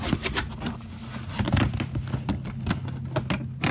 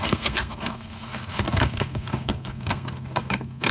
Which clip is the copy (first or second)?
second